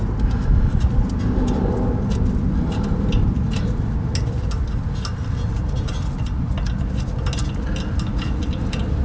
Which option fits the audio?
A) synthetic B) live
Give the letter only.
B